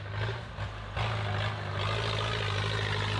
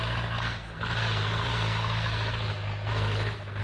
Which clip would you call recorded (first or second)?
first